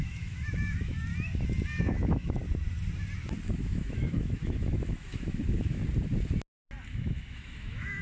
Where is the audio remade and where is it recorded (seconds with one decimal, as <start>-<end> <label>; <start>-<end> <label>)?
0.0-1.1 remade; 1.1-1.8 recorded; 1.8-2.4 remade; 2.4-3.6 recorded; 3.6-5.8 remade; 5.8-6.9 recorded; 6.9-8.0 remade